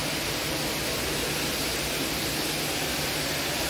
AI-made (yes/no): no